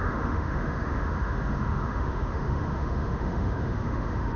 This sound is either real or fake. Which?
fake